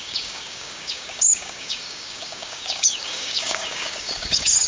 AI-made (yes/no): yes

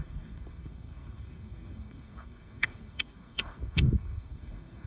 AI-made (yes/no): yes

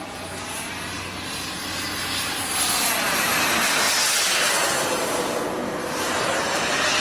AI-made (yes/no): no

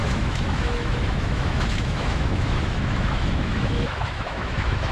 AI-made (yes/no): yes